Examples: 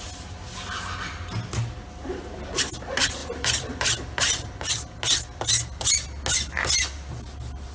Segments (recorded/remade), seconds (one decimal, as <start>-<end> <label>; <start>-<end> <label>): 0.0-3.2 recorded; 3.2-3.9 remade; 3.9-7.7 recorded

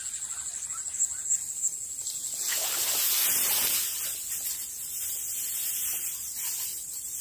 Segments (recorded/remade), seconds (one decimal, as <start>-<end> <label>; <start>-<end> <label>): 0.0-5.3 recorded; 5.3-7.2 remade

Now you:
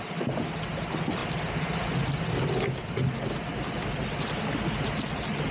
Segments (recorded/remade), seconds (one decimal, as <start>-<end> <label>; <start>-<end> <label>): 0.0-5.5 recorded

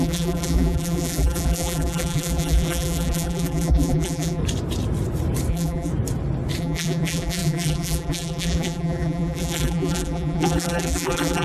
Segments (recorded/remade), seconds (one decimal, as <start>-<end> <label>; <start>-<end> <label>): 0.0-4.4 remade; 4.4-5.5 recorded; 5.5-5.9 remade; 5.9-6.6 recorded; 6.6-11.4 remade

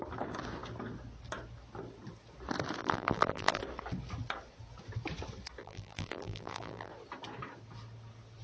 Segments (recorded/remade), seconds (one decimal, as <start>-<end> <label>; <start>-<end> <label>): 0.0-2.8 recorded; 2.8-3.6 remade; 3.6-5.6 recorded; 5.6-6.9 remade; 6.9-8.4 recorded

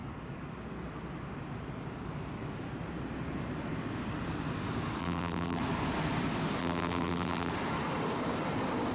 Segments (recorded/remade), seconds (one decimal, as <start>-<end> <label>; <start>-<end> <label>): 0.0-5.0 recorded; 5.0-5.6 remade; 5.6-6.6 recorded; 6.6-7.5 remade; 7.5-8.9 recorded